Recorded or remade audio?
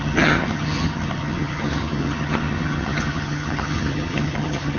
remade